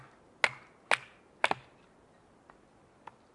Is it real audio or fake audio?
real